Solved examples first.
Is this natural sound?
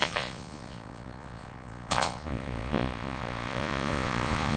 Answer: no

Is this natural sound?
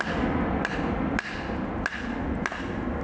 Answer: yes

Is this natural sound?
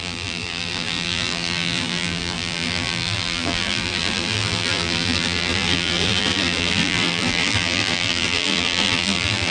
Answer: no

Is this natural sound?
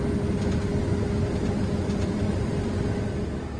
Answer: yes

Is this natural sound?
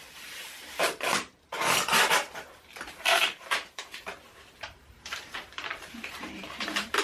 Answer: no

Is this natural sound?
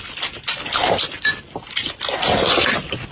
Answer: yes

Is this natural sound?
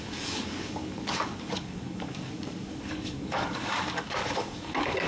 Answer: no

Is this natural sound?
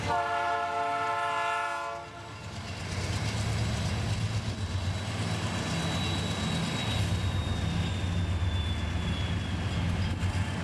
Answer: yes